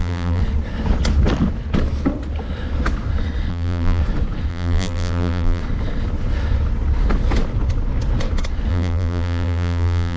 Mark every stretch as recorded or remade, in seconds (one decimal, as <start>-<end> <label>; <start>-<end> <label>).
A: 0.0-0.4 remade; 0.4-3.5 recorded; 3.5-4.0 remade; 4.0-4.5 recorded; 4.5-5.6 remade; 5.6-8.7 recorded; 8.7-10.2 remade